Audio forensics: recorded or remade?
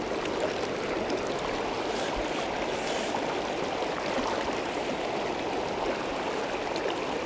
recorded